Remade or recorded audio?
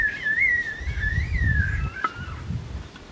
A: recorded